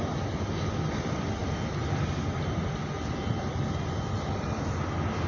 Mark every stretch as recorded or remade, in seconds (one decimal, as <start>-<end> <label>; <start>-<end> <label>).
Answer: 0.0-1.4 recorded; 1.4-2.1 remade; 2.1-5.3 recorded